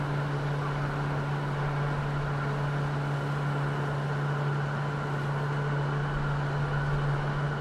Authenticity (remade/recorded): recorded